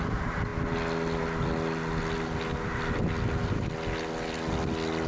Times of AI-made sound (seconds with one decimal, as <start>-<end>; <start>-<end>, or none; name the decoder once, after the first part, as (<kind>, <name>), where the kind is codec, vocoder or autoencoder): none